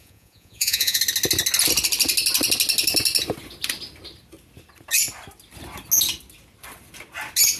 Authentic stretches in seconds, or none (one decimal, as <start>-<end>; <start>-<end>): 1.0-7.6